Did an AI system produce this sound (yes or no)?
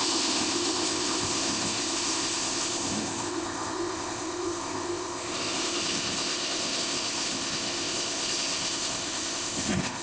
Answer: yes